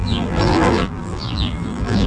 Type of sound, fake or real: fake